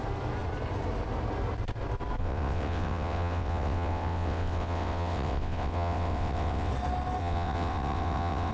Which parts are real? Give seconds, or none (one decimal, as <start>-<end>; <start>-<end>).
0.0-2.2; 6.7-7.2